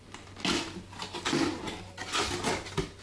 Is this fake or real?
real